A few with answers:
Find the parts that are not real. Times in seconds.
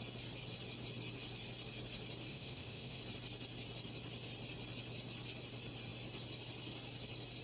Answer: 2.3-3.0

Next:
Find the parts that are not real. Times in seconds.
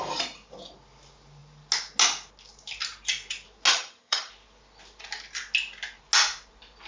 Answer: 3.7-4.3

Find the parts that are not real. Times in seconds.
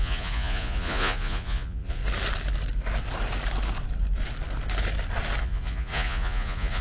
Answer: 0.0-2.0; 5.4-6.8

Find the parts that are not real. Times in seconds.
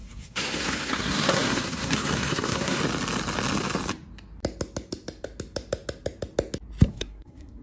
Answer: 0.0-2.8; 6.9-7.6